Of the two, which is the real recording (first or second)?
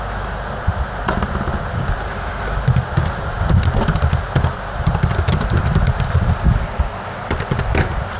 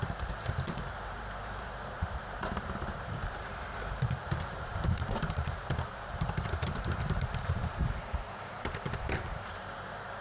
first